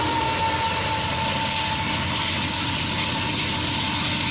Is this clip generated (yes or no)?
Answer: no